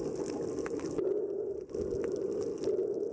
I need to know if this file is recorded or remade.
recorded